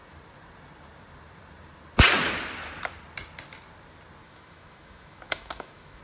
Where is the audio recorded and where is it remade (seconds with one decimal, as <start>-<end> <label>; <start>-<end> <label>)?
0.0-4.2 recorded; 4.2-6.0 remade